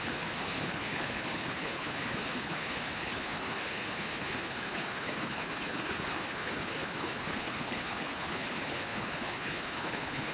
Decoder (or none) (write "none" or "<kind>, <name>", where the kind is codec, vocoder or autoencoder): codec, HILCodec